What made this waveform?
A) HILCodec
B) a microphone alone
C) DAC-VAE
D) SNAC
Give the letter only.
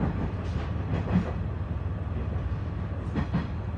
B